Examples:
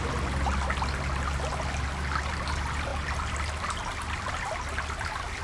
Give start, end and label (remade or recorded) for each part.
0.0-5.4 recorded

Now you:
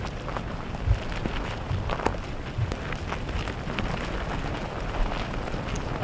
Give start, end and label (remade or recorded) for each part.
0.0-6.0 recorded

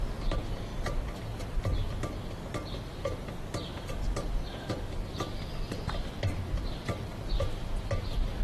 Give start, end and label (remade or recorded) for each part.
0.0-8.4 recorded